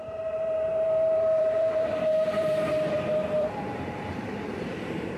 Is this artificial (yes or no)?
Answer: yes